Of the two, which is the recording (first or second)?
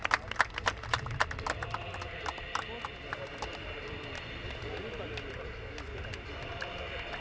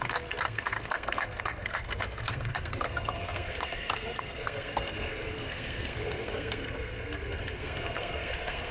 first